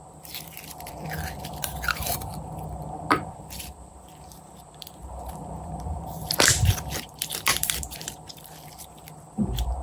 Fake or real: fake